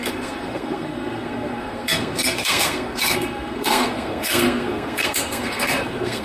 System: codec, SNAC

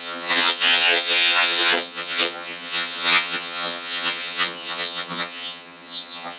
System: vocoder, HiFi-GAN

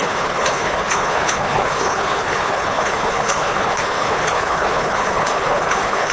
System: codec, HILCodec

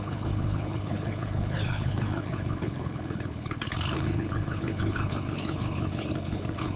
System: codec, HILCodec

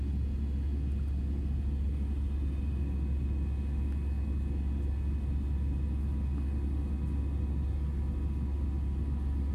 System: none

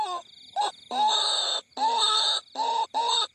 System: none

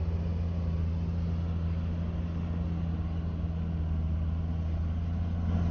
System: none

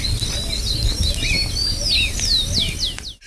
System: none